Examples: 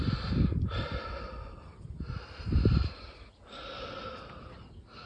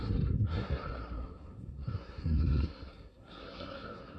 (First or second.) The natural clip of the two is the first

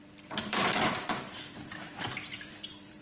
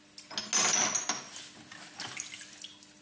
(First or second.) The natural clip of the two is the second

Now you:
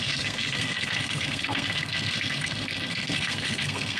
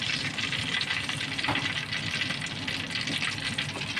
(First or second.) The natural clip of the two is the second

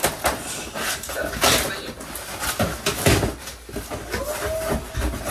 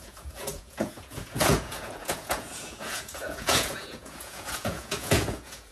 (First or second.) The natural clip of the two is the first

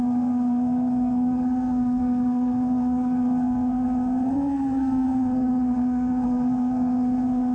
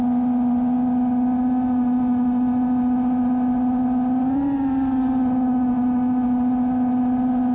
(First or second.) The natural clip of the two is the second